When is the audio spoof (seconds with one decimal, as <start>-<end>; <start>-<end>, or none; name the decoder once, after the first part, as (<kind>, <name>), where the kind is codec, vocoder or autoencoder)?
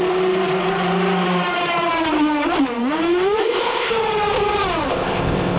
3.4-3.9 (codec, ZipCodec); 4.9-5.6